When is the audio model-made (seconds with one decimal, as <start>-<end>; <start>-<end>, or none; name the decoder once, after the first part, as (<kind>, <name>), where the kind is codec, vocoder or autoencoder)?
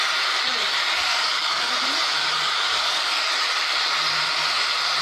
1.1-1.7 (codec, DAC); 2.2-3.3